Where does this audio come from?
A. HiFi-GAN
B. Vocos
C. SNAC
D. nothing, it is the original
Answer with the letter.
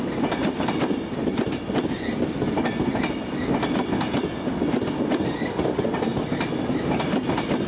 D